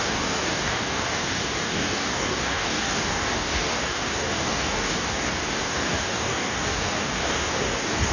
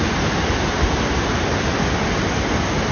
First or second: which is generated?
first